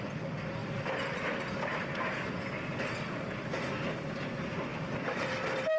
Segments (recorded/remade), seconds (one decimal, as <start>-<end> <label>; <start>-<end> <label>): 0.0-4.7 recorded; 4.7-5.8 remade